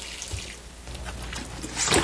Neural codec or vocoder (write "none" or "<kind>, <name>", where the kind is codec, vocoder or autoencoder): none